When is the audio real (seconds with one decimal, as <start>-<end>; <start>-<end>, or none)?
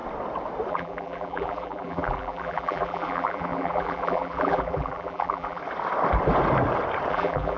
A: 0.0-0.7; 5.6-7.1